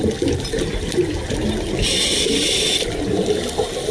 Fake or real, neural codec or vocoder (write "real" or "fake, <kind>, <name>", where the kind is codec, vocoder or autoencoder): real